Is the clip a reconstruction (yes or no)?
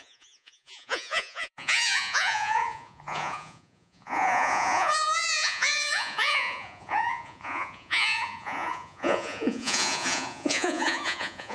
yes